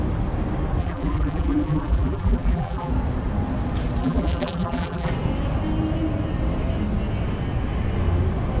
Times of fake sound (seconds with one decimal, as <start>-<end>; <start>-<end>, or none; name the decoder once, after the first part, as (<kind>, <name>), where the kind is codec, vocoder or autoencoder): 0.8-2.9 (vocoder, BigVGAN v2); 4.0-5.1